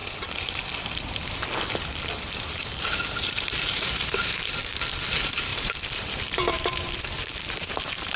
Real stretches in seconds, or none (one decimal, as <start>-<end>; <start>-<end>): 0.0-2.4; 4.6-5.1